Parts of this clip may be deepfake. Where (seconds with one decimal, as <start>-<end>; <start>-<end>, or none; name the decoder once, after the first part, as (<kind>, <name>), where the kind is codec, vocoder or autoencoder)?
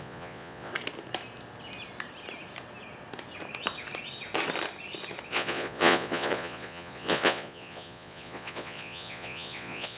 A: 0.0-0.7 (vocoder, Vocos); 5.3-10.0